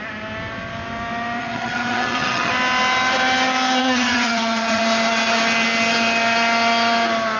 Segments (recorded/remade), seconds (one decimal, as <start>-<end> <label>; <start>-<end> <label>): 0.0-1.4 recorded; 1.4-2.5 remade; 2.5-3.8 recorded; 3.8-4.8 remade; 4.8-7.4 recorded